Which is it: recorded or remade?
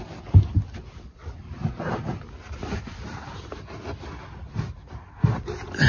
recorded